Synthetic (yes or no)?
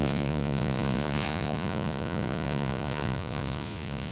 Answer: yes